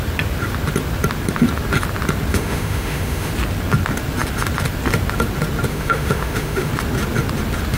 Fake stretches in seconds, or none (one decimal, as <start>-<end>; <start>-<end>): 2.3-3.3; 5.7-6.7